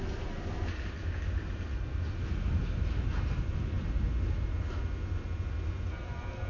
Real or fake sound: real